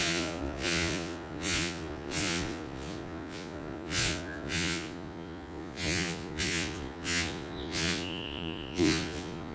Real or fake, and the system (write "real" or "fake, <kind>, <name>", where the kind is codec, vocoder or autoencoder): fake, vocoder, Vocos